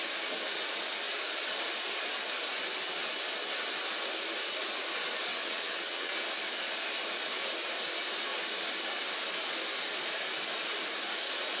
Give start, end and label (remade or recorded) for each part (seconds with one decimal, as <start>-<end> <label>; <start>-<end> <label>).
0.0-5.3 recorded; 5.3-6.1 remade; 6.1-11.6 recorded